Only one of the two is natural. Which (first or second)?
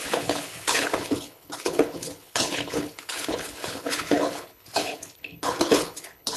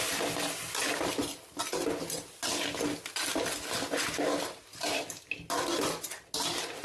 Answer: second